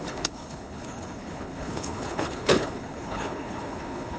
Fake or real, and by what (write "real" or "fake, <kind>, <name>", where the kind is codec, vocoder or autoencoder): fake, codec, HILCodec